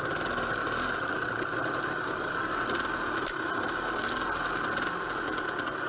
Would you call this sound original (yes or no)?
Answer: yes